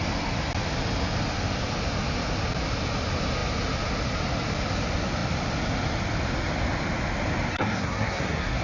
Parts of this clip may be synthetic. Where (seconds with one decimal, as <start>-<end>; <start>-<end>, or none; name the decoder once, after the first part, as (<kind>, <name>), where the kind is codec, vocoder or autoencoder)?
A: 7.5-8.6 (codec, SNAC)